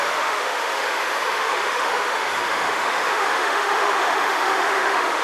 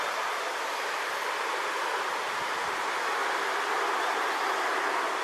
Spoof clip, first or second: first